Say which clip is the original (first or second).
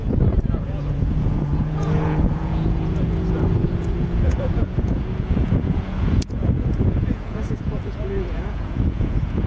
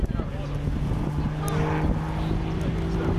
second